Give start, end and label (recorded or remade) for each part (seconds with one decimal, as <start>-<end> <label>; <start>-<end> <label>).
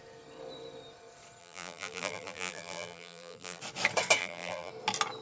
0.0-1.4 recorded; 1.4-3.6 remade; 3.6-4.2 recorded; 4.2-4.7 remade; 4.7-5.2 recorded